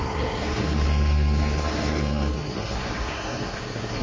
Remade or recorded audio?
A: remade